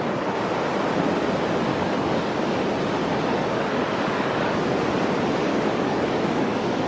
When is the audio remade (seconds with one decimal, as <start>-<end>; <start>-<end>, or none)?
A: 1.7-2.6; 3.1-4.6; 5.5-6.9